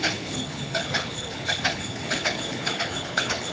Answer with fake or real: fake